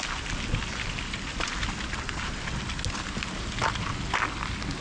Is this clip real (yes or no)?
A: yes